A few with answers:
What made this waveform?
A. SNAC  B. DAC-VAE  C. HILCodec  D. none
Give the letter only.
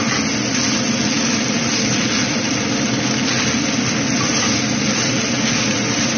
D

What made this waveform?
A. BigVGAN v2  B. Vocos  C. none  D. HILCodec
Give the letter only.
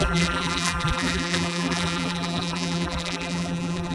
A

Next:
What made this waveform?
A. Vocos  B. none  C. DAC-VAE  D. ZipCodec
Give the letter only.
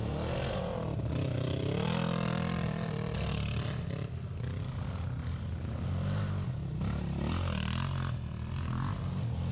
B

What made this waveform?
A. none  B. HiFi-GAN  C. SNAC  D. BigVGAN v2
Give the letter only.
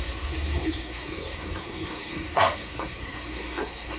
C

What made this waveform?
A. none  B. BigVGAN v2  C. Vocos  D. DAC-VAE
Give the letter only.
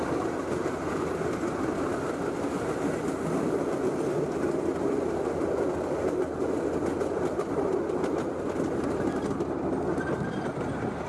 A